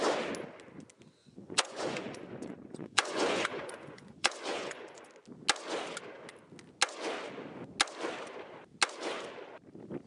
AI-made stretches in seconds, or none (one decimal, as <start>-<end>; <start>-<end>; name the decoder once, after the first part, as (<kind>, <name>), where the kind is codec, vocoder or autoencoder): 1.2-5.1 (vocoder, Vocos)